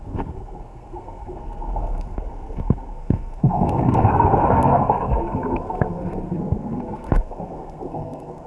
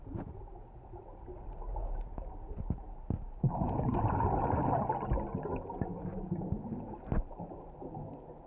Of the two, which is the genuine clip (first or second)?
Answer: second